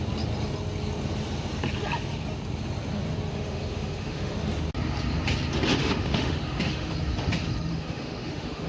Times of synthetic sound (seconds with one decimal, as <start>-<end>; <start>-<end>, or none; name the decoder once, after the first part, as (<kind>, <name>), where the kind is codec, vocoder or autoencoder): 3.3-4.3 (autoencoder, DAC-VAE); 5.8-6.9; 7.7-8.7